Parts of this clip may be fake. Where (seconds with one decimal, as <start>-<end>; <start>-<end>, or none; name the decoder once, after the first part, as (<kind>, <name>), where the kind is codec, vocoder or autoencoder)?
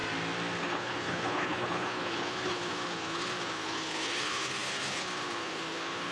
0.6-6.1 (codec, HILCodec)